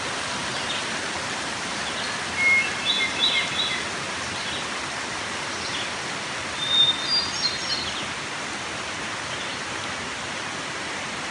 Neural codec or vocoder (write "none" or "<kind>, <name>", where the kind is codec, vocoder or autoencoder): none